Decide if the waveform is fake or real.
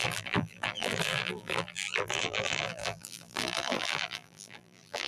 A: fake